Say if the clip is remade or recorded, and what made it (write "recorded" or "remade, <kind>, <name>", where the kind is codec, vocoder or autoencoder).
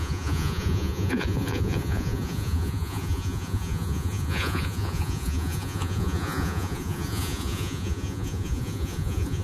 remade, vocoder, Vocos